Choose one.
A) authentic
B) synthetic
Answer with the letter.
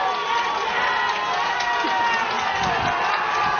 A